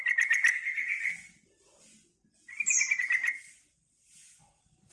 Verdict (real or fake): real